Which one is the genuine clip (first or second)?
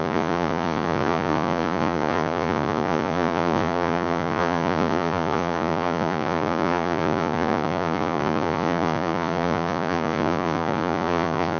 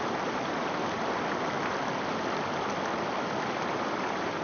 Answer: second